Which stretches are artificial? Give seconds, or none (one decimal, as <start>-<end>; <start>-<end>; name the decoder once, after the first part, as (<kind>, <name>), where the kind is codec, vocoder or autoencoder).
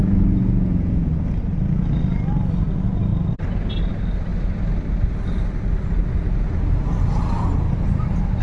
0.0-1.1 (vocoder, Vocos)